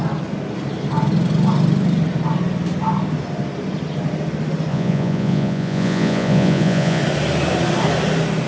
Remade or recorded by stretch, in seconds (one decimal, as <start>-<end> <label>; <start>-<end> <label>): 0.0-4.7 recorded; 4.7-7.0 remade; 7.0-8.5 recorded